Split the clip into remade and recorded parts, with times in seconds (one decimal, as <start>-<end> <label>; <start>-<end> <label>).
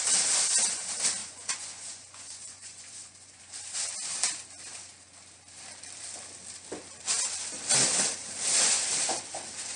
0.0-1.2 recorded; 1.2-3.4 remade; 3.4-9.8 recorded